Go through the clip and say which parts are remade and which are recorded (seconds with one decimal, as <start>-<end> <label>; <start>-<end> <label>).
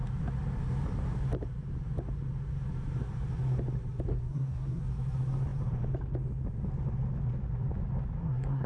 0.0-4.1 recorded; 4.1-4.8 remade; 4.8-8.2 recorded; 8.2-8.7 remade